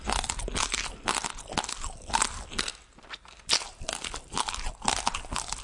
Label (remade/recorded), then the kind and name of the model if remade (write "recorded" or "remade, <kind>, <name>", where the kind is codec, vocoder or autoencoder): recorded